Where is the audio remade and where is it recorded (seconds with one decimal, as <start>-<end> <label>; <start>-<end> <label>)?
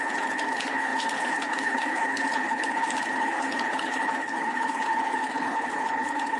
0.0-6.4 remade